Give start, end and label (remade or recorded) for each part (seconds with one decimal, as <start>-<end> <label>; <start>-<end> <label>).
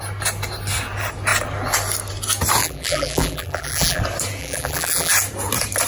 0.0-2.6 recorded; 2.6-4.0 remade; 4.0-4.4 recorded; 4.4-5.1 remade; 5.1-5.9 recorded